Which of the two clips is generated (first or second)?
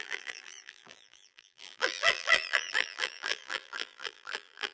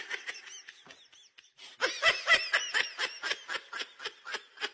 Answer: first